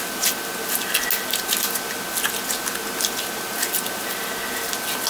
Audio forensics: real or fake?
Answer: real